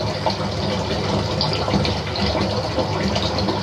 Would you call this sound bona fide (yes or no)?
yes